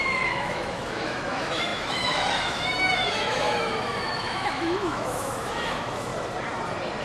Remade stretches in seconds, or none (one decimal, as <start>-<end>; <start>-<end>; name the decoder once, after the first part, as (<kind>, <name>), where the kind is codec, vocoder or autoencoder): 0.0-6.1 (autoencoder, DAC-VAE)